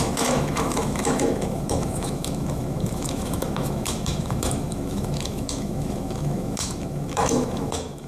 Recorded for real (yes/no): no